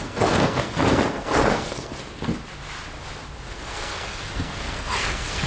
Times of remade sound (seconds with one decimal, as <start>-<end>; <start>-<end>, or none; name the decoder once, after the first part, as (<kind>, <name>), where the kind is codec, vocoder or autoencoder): 0.0-2.3 (codec, SNAC); 3.5-5.5

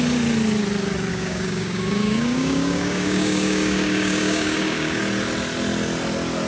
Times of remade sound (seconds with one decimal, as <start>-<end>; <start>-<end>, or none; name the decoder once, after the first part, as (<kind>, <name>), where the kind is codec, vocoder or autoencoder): 1.1-5.0 (codec, DAC)

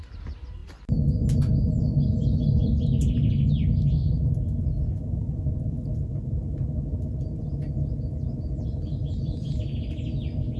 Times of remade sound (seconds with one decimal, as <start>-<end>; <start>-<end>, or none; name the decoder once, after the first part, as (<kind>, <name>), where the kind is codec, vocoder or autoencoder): none

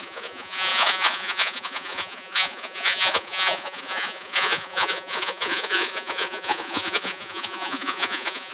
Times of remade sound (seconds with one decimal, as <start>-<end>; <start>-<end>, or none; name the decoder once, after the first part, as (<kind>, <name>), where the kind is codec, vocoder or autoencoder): 0.0-8.5 (vocoder, Vocos)

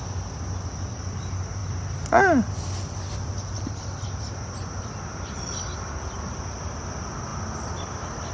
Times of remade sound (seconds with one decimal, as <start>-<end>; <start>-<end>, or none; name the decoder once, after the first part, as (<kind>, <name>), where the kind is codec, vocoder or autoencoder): none

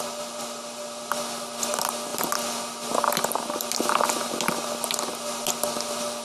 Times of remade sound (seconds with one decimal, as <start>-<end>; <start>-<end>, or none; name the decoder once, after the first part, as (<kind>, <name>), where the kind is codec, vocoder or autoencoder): none